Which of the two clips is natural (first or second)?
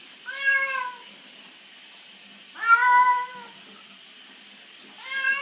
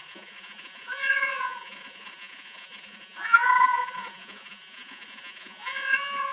first